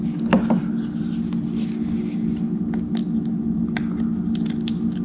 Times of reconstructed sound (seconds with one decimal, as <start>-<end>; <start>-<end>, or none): none

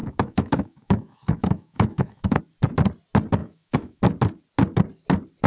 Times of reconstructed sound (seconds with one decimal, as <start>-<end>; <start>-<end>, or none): 0.0-2.4; 3.4-4.0

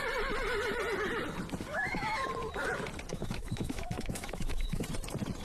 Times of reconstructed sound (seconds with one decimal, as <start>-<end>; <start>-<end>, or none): 1.7-2.3; 3.1-4.8

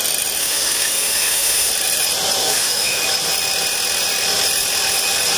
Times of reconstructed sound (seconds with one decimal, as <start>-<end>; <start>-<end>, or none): 0.4-1.7; 2.4-3.0

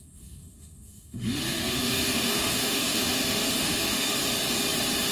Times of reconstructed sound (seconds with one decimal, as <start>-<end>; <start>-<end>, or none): 0.0-4.2

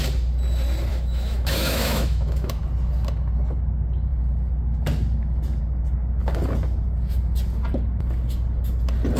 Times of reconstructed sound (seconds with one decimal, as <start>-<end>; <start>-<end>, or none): 0.9-2.6

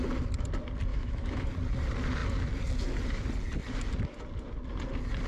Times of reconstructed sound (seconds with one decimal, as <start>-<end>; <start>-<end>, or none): 0.9-1.5